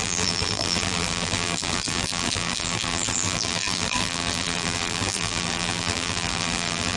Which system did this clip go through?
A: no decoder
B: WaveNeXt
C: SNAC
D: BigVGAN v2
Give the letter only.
D